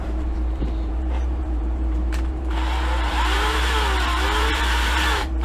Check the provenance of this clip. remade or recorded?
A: remade